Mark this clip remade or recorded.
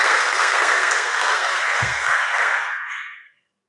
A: remade